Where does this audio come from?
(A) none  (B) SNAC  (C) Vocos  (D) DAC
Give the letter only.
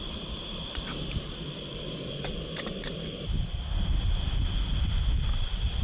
A